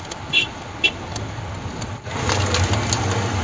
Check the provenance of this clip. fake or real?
real